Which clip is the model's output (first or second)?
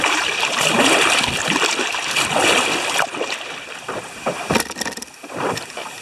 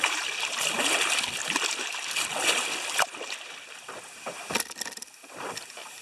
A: first